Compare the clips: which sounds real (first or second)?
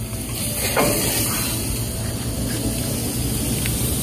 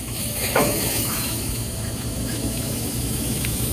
first